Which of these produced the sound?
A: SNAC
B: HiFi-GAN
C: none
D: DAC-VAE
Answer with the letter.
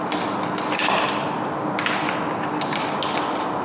C